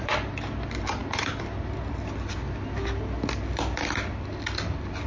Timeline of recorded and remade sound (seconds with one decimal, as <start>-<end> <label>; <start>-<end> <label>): 0.0-5.1 recorded